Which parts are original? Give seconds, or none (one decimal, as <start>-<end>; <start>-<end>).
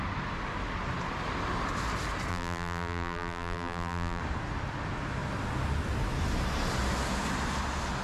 0.0-2.3; 4.2-8.0